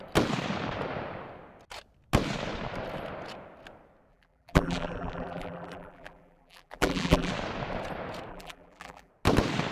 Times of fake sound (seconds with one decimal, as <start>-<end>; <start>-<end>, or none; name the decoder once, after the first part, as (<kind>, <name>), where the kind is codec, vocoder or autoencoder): 4.1-7.3 (vocoder, BigVGAN v2); 8.3-9.1

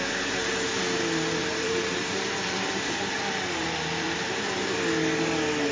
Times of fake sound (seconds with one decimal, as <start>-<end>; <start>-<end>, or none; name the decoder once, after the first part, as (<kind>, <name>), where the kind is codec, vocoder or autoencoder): 1.4-4.8 (vocoder, BigVGAN v2)

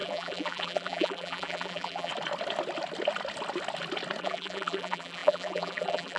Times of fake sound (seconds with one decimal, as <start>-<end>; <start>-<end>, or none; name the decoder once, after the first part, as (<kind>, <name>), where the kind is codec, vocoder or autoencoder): 0.0-2.1 (vocoder, BigVGAN v2); 4.2-6.2

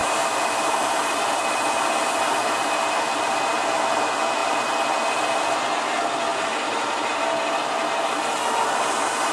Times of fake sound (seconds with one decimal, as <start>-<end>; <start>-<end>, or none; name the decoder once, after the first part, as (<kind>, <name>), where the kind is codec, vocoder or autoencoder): 0.0-1.3 (vocoder, BigVGAN v2); 6.3-7.2